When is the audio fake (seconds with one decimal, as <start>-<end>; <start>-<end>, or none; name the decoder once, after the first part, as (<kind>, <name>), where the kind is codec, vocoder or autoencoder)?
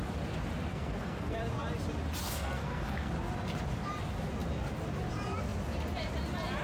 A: 0.7-1.4 (codec, SNAC); 2.2-3.1